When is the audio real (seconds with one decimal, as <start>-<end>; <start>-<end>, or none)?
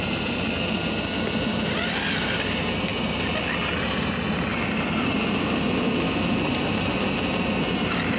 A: 0.0-8.2